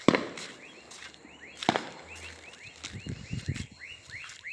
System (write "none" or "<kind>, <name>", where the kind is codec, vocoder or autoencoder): none